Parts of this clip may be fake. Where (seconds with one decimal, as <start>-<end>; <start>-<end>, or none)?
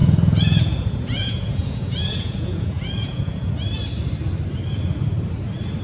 0.0-3.5